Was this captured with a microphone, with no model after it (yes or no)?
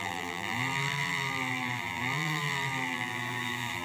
no